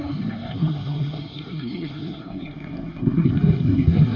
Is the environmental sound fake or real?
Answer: fake